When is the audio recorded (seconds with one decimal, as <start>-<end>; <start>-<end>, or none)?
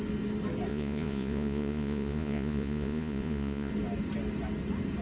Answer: 0.0-0.7; 3.7-5.0